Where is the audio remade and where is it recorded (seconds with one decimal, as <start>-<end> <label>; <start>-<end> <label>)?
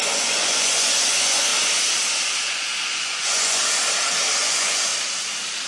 0.0-1.5 remade; 1.5-2.4 recorded; 2.4-3.6 remade; 3.6-4.4 recorded; 4.4-4.9 remade; 4.9-5.7 recorded